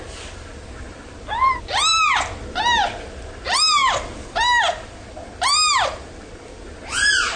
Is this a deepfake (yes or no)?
no